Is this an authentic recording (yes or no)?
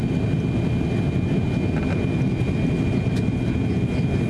yes